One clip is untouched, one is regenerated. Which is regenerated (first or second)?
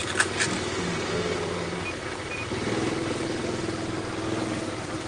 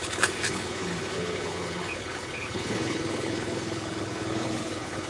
second